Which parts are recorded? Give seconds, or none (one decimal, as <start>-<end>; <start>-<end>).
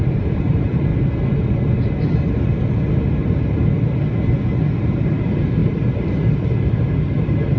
0.9-4.8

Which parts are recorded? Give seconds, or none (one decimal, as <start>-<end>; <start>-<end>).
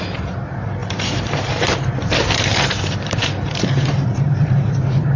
none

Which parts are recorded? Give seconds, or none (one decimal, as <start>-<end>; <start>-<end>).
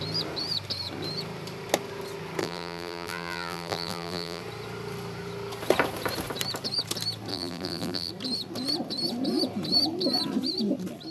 0.0-2.4; 4.4-7.3; 8.1-11.1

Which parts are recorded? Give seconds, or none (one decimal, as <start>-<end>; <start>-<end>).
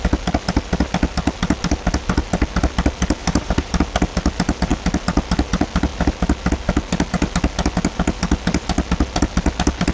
0.0-3.2; 3.8-9.9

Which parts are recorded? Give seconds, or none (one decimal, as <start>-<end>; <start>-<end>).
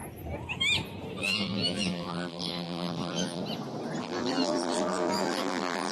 0.0-1.2; 3.4-4.0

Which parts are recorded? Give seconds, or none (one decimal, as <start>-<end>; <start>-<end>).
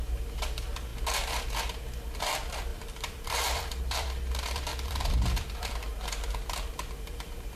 0.9-1.6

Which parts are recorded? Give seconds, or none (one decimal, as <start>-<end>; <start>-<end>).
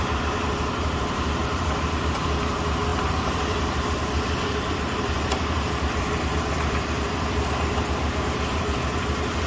0.0-1.4; 2.0-2.9; 8.1-9.5